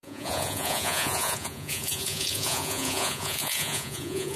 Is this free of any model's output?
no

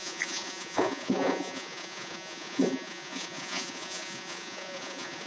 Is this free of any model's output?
no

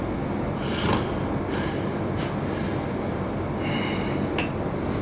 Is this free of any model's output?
yes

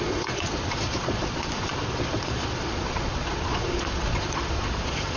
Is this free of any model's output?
no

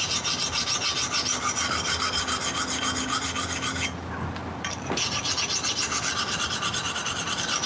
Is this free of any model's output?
yes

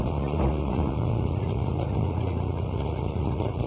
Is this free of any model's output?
no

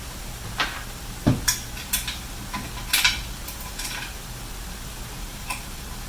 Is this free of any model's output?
yes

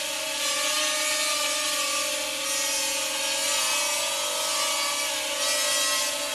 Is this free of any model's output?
yes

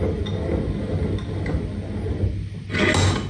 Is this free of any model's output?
yes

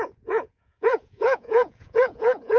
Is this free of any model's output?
no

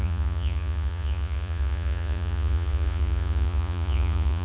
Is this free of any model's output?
no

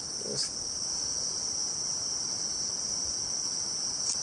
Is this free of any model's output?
yes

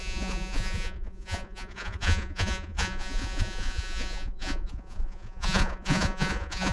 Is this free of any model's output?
no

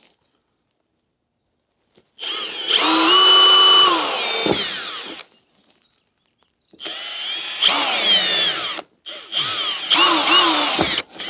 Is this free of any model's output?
yes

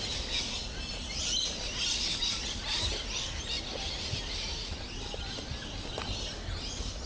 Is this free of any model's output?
yes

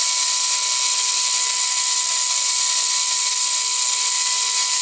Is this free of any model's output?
yes